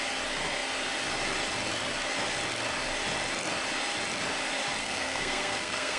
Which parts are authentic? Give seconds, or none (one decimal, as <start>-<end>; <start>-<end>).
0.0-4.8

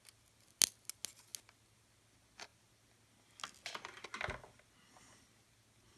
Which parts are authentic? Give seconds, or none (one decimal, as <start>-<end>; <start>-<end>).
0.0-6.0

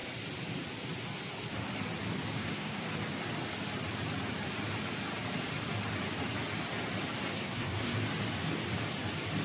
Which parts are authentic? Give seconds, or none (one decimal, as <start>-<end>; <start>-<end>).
0.0-2.4; 2.9-7.3; 8.0-9.4

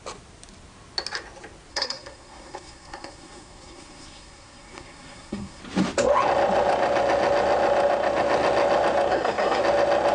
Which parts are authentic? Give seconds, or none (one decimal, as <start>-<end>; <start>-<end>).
0.0-1.7; 5.6-9.1; 9.6-10.1